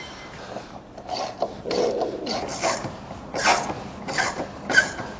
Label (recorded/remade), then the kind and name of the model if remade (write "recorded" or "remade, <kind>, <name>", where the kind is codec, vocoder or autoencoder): remade, vocoder, BigVGAN v2